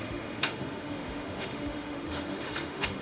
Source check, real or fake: fake